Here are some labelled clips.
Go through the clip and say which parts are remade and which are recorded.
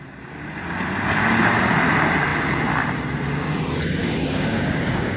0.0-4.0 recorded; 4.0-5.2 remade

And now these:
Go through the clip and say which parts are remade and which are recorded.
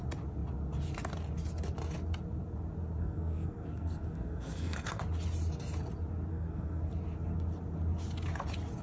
0.0-3.0 recorded; 3.0-5.0 remade; 5.0-6.3 recorded; 6.3-6.8 remade; 6.8-8.8 recorded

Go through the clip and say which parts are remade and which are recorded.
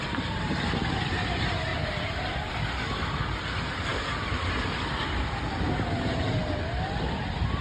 0.0-1.7 recorded; 1.7-2.5 remade; 2.5-7.6 recorded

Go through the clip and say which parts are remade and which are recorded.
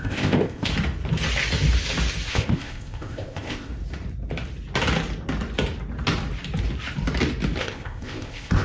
0.0-0.7 remade; 0.7-2.3 recorded; 2.3-3.7 remade; 3.7-7.6 recorded; 7.6-8.6 remade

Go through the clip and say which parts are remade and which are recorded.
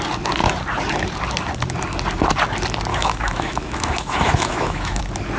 0.0-2.9 recorded; 2.9-5.0 remade; 5.0-5.4 recorded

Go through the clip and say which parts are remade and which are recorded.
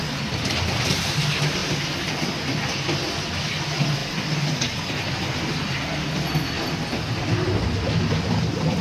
0.0-8.8 recorded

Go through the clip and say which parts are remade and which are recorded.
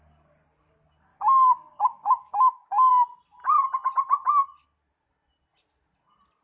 0.0-1.1 recorded; 1.1-2.9 remade; 2.9-6.4 recorded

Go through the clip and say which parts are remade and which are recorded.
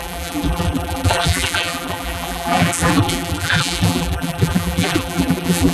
0.0-5.7 remade